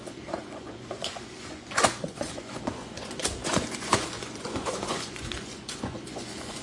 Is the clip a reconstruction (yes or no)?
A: yes